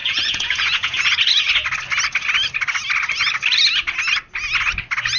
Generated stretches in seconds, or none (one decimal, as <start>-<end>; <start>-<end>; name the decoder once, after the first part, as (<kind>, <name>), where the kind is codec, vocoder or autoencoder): 0.0-1.3 (vocoder, Vocos)